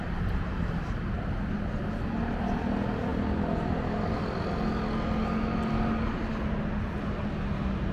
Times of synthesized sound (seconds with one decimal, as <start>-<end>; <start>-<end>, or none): none